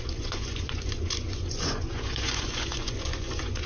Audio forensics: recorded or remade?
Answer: remade